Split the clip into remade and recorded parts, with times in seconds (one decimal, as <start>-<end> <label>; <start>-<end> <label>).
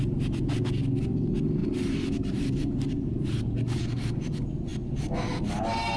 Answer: 0.0-1.6 recorded; 1.6-4.3 remade; 4.3-6.0 recorded